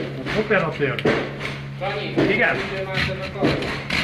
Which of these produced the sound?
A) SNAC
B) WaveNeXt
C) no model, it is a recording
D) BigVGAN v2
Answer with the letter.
C